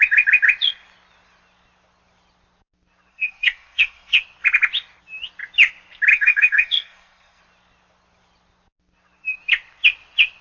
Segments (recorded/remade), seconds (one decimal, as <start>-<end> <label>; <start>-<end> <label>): 0.0-3.1 recorded; 3.1-4.2 remade; 4.2-6.1 recorded; 6.1-7.4 remade; 7.4-10.4 recorded